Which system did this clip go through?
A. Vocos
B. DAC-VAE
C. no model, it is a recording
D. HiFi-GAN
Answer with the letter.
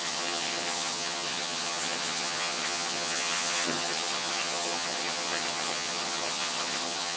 D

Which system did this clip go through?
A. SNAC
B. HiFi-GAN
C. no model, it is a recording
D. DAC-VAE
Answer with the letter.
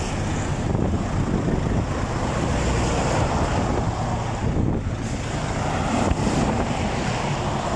C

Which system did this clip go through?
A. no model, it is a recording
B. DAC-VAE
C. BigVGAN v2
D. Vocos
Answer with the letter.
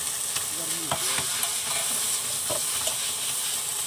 A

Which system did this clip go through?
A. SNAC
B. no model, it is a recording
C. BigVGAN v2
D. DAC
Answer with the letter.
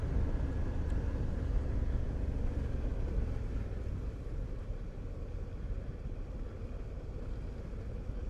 B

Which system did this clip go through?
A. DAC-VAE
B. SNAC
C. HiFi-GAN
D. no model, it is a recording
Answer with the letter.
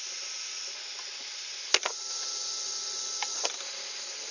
D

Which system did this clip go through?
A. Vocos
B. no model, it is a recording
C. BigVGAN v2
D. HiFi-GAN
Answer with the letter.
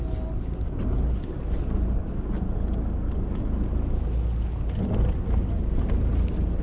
B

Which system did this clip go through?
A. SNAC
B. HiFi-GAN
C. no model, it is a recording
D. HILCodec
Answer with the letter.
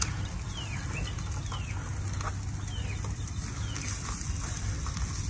C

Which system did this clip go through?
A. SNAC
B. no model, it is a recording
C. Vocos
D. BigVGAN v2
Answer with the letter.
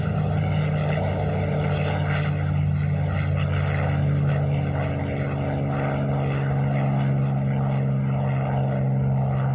B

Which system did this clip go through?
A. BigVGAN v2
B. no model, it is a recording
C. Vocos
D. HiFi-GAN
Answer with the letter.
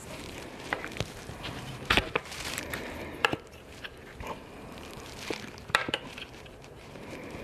A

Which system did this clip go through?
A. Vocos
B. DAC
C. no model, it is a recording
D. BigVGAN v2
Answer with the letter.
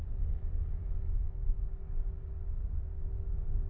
C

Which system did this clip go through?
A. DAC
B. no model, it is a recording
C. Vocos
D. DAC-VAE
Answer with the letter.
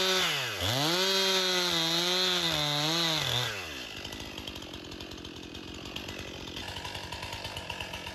B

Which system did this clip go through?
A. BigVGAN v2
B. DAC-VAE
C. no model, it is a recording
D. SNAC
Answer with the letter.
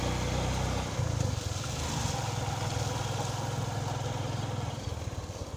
C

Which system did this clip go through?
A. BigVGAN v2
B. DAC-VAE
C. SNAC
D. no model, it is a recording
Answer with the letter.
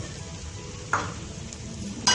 D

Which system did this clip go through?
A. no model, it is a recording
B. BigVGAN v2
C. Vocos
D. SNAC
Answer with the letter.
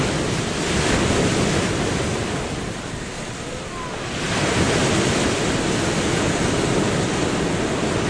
A